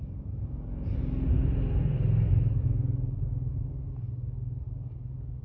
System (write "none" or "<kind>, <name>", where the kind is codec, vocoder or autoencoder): none